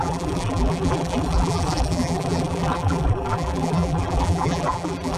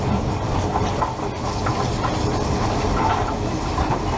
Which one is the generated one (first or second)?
first